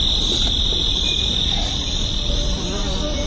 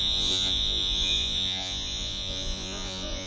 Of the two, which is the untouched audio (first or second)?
first